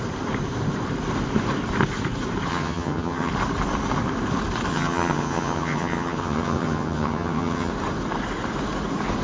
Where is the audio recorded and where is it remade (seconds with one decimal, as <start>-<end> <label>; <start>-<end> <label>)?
0.0-2.5 recorded; 2.5-3.3 remade; 3.3-4.7 recorded; 4.7-7.7 remade; 7.7-9.2 recorded